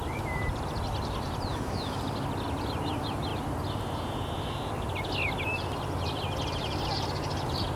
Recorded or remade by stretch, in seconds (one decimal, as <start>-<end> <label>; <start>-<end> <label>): 0.0-1.5 recorded; 1.5-2.0 remade; 2.0-7.8 recorded